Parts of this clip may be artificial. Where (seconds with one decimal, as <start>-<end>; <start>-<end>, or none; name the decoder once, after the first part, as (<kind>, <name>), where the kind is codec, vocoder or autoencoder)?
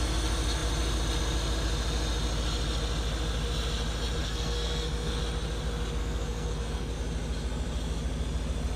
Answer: 4.2-5.2 (codec, SNAC); 6.0-6.9